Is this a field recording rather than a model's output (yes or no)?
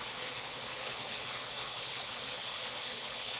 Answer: no